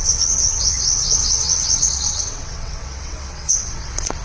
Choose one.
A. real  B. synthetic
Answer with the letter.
B